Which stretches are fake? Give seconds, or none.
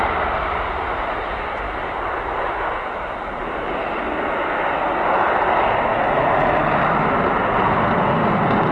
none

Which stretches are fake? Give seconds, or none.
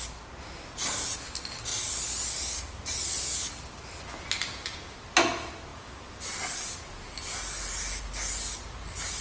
none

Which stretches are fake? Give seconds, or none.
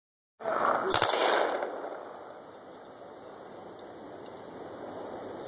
none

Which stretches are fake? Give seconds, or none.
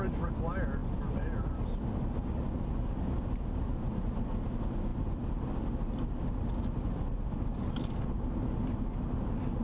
none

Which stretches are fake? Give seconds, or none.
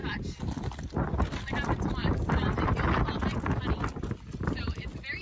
none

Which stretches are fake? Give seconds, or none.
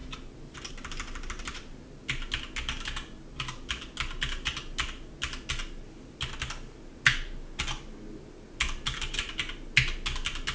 none